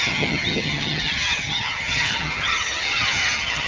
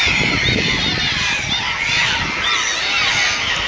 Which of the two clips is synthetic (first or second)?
first